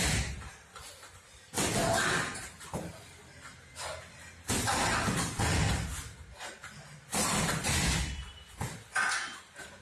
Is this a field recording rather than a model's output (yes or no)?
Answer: yes